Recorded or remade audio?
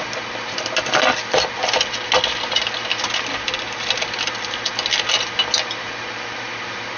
recorded